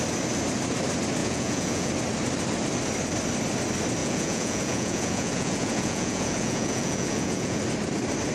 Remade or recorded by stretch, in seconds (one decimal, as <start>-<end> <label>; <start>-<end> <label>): 0.0-1.2 recorded; 1.2-1.9 remade; 1.9-4.0 recorded; 4.0-7.6 remade; 7.6-8.3 recorded